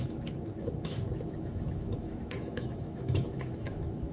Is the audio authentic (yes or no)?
no